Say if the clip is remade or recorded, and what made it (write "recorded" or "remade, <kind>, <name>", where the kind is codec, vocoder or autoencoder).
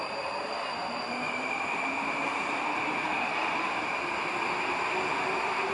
recorded